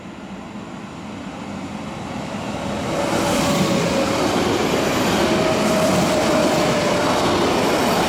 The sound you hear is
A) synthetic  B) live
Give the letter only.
B